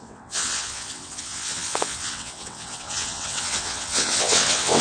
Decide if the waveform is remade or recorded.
remade